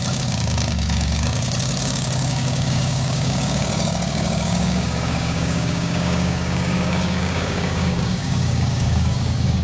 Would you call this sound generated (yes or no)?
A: yes